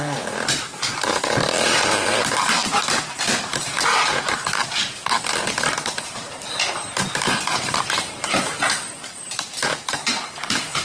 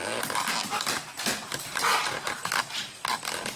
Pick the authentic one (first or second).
second